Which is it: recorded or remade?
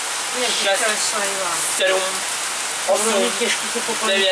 recorded